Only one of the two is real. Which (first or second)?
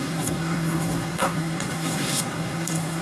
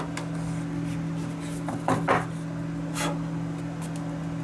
second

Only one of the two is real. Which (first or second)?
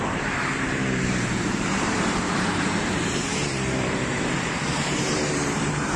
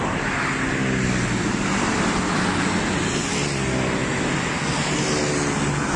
second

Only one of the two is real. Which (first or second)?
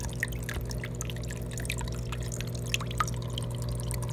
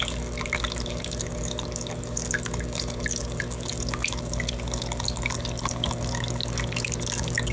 first